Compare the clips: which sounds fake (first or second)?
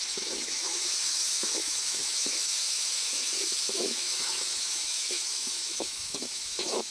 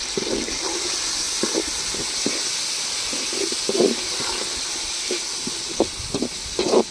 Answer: first